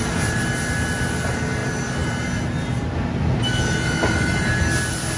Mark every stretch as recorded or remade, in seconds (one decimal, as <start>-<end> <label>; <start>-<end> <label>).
0.0-5.2 recorded